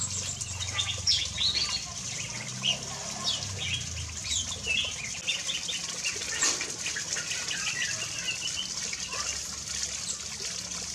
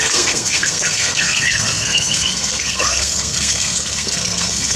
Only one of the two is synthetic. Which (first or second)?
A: second